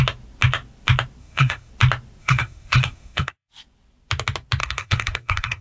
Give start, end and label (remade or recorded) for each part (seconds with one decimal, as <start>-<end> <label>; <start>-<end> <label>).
0.0-1.2 recorded; 1.2-1.7 remade; 1.7-2.2 recorded; 2.2-3.5 remade; 3.5-4.6 recorded; 4.6-5.6 remade

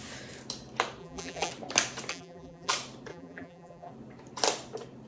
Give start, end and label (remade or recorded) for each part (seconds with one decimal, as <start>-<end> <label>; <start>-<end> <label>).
0.0-1.0 recorded; 1.0-1.5 remade; 1.5-2.1 recorded; 2.1-2.7 remade; 2.7-3.1 recorded; 3.1-3.9 remade; 3.9-5.1 recorded

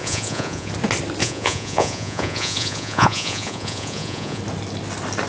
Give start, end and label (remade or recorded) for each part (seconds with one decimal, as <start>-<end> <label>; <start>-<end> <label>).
0.0-0.7 remade; 0.7-1.2 recorded; 1.2-4.4 remade; 4.4-5.3 recorded

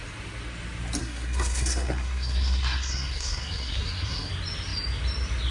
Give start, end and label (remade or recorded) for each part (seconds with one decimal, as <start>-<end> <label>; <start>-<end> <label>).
0.0-1.0 recorded; 1.0-4.3 remade; 4.3-5.5 recorded